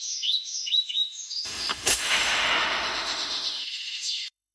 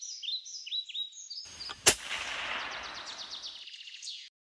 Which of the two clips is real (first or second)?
second